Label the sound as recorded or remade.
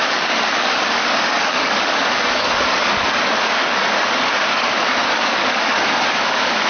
remade